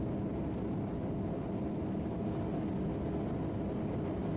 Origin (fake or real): real